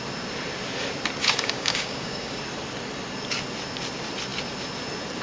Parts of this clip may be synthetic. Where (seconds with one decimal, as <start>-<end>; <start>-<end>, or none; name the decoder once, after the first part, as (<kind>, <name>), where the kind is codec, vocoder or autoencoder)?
1.2-2.4 (codec, DAC)